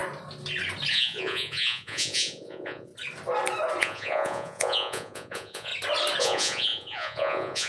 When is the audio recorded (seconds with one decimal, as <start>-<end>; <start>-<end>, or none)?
0.0-0.9; 2.9-3.8; 5.7-6.2

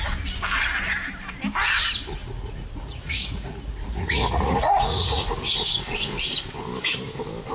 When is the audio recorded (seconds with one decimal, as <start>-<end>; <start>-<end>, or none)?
0.0-2.2; 6.4-7.5

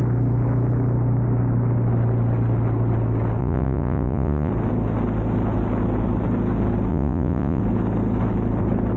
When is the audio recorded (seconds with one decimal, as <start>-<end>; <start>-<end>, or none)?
0.0-3.4; 4.5-6.9; 7.6-9.0

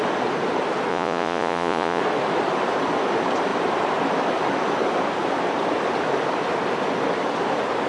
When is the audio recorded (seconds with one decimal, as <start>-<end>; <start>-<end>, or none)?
0.0-0.9; 2.0-7.9

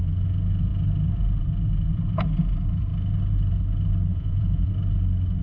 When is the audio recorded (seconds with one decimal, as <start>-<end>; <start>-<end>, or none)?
0.0-4.1; 4.7-5.4

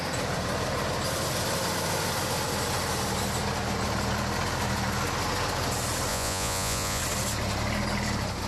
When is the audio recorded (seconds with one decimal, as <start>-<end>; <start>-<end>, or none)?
0.0-6.1; 7.0-8.5